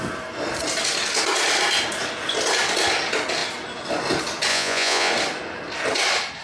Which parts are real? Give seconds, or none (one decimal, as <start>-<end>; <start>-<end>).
0.0-4.5; 5.1-6.4